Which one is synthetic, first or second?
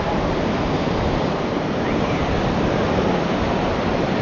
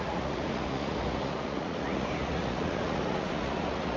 second